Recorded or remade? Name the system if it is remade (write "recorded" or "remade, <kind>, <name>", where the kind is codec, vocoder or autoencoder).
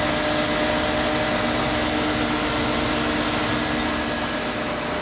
recorded